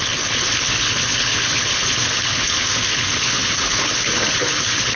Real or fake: fake